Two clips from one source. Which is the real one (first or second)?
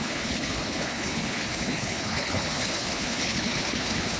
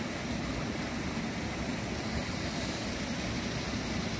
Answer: second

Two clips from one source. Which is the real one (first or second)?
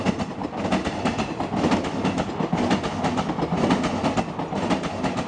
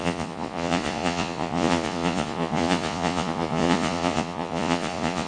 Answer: first